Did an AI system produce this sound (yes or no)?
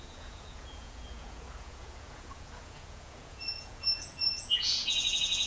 yes